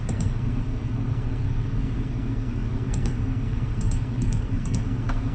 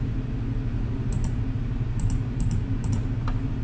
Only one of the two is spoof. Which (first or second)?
first